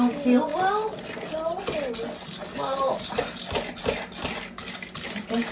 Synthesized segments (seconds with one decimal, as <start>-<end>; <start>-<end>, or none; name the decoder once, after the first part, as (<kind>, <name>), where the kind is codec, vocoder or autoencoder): none